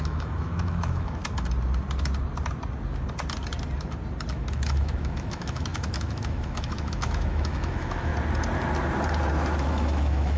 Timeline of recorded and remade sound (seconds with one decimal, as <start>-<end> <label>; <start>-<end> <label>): 0.0-1.2 remade; 1.2-4.3 recorded; 4.3-8.1 remade; 8.1-9.6 recorded; 9.6-10.4 remade